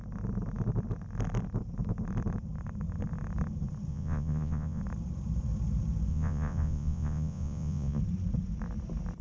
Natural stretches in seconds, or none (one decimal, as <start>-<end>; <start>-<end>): 0.0-3.9; 4.8-6.1; 8.0-9.2